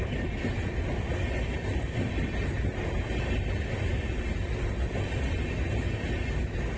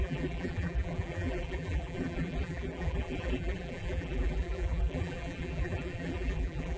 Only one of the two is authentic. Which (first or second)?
first